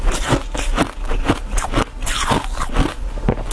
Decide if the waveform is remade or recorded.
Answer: recorded